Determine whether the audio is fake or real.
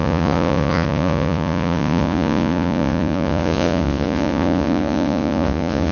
fake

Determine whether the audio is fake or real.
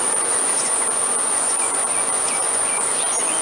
fake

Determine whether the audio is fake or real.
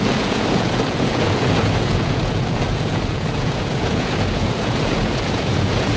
fake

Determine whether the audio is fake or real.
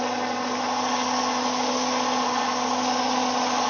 real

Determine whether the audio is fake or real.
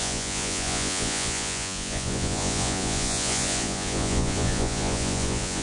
fake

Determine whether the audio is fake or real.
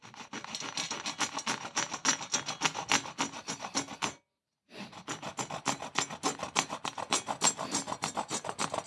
real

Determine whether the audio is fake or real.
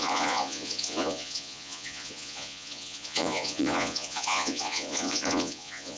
fake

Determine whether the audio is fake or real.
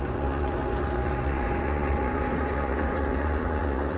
fake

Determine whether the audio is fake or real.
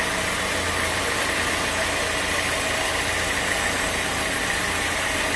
real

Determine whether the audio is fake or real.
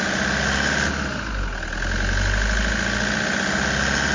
real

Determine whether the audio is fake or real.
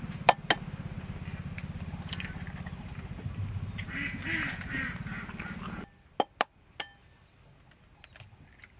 real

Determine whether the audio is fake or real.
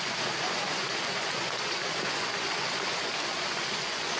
fake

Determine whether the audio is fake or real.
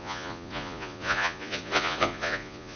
fake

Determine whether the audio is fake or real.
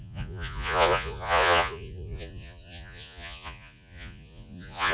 fake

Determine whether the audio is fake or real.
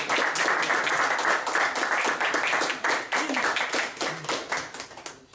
real